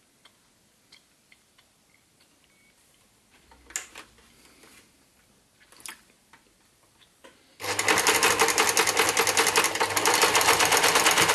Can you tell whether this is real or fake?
real